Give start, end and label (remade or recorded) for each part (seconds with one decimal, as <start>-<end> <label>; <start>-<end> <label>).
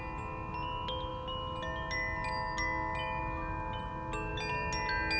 0.0-5.2 recorded